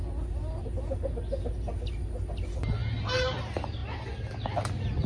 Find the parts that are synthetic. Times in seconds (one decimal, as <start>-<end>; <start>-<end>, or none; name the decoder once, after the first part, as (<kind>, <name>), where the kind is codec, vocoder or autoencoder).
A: none